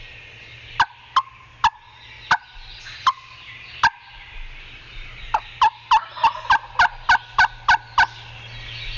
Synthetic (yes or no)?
no